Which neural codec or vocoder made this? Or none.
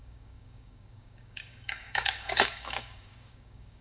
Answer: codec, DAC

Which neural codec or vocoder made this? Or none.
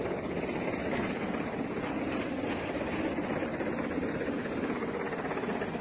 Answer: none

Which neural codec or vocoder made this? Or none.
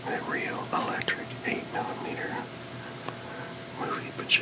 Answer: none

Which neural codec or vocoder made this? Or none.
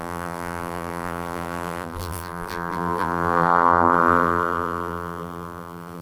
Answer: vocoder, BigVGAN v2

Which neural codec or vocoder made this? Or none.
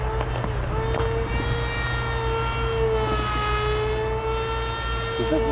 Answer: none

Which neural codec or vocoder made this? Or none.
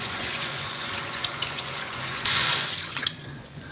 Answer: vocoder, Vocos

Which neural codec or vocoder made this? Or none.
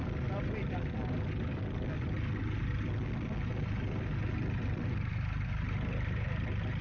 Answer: none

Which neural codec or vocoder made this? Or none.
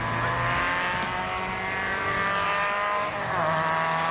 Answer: none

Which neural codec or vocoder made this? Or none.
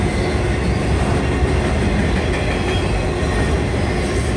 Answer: none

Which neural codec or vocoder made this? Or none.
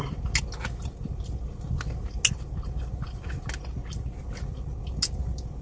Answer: none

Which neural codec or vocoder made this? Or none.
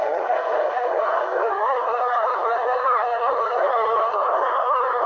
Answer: codec, SNAC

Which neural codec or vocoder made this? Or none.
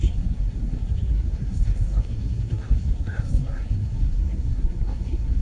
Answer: codec, SNAC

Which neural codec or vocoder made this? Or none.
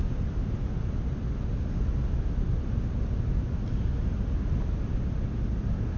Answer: none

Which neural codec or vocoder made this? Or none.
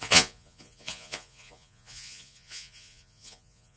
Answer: vocoder, Vocos